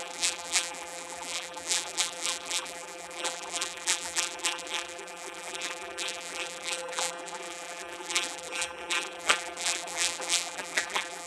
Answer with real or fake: fake